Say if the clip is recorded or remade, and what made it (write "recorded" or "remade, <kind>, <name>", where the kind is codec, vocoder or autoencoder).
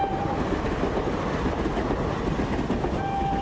recorded